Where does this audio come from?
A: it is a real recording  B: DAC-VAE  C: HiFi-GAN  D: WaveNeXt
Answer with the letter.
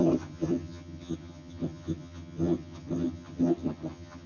C